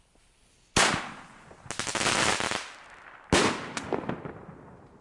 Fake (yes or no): no